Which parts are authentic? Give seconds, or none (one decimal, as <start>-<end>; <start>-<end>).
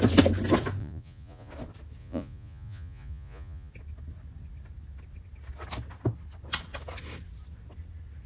0.0-0.8; 1.5-2.0; 3.7-8.3